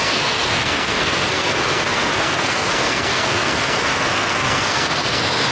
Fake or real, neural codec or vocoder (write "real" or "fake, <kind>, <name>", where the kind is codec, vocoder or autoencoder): fake, codec, SNAC